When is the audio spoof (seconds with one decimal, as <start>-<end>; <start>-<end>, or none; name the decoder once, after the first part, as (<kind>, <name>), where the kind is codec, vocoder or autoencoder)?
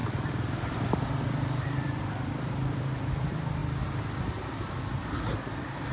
0.0-3.1 (vocoder, BigVGAN v2)